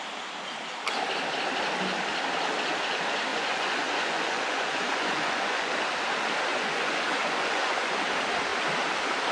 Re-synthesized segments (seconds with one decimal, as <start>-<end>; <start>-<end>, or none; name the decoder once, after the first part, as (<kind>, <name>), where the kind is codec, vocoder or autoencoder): 3.3-5.7 (vocoder, Vocos); 6.5-8.0